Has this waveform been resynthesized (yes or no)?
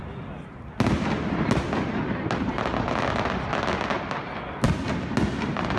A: no